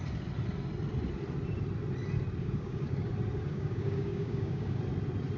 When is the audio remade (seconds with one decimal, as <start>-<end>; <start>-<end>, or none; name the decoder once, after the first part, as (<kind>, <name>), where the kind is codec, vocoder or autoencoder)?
2.4-3.1 (codec, DAC); 3.5-4.8